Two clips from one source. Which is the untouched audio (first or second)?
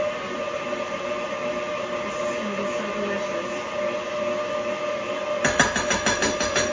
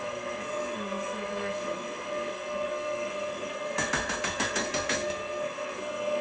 first